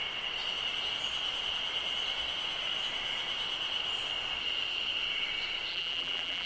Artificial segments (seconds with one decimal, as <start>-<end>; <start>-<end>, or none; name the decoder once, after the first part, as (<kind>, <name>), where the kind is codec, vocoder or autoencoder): 5.7-6.5 (vocoder, BigVGAN v2)